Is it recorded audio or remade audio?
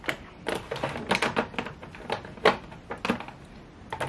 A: recorded